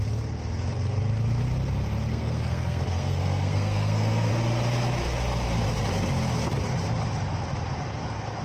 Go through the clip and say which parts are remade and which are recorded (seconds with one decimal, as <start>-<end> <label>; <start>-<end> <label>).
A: 0.0-2.1 recorded; 2.1-4.3 remade; 4.3-8.4 recorded